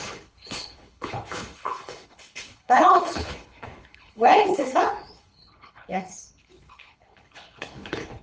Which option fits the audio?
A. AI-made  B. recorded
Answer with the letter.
A